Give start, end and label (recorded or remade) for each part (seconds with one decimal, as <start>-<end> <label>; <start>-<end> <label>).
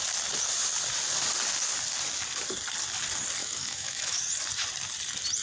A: 0.0-3.4 recorded; 3.4-4.2 remade; 4.2-5.4 recorded